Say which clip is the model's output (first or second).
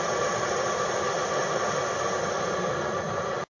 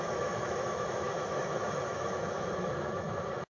second